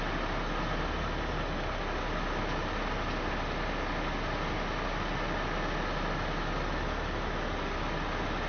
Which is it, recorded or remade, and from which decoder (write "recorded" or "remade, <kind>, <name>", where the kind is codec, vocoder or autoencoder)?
recorded